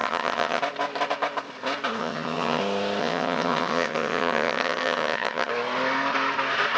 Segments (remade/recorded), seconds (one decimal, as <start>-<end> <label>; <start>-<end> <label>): 0.0-0.6 remade; 0.6-2.0 recorded; 2.0-2.6 remade; 2.6-3.0 recorded; 3.0-5.5 remade; 5.5-6.8 recorded